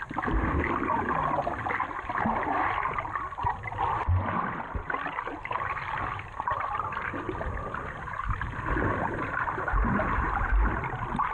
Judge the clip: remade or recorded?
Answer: recorded